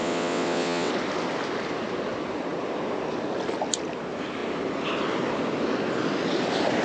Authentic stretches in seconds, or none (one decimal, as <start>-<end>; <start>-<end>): 0.9-6.8